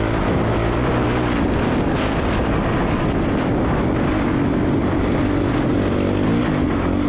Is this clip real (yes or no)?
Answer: yes